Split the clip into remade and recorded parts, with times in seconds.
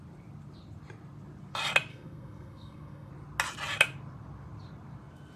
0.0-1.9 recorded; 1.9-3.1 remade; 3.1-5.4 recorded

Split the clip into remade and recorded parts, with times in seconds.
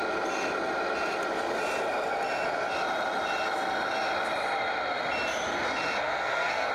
0.0-6.0 recorded; 6.0-6.7 remade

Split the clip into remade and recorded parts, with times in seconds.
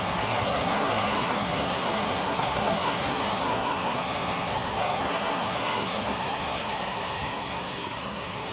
0.0-8.5 remade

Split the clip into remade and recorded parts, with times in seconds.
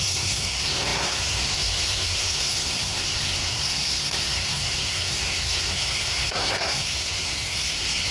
0.0-8.1 remade